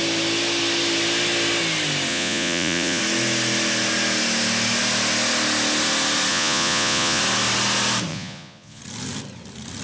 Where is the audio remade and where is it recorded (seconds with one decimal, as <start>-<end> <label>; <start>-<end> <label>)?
0.0-2.1 recorded; 2.1-3.0 remade; 3.0-6.3 recorded; 6.3-7.2 remade; 7.2-8.1 recorded; 8.1-8.8 remade; 8.8-9.8 recorded